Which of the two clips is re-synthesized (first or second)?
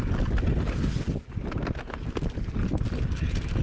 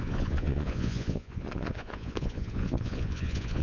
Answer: second